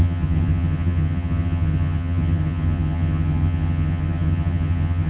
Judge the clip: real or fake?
fake